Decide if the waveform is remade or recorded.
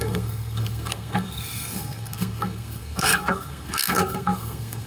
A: remade